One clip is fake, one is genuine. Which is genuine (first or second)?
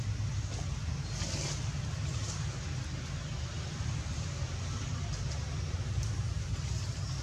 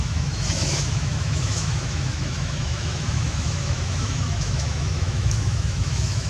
first